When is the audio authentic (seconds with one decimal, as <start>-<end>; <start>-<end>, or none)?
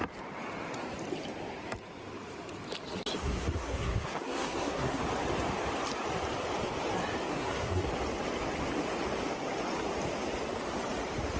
0.0-3.2; 5.0-7.3; 7.9-11.4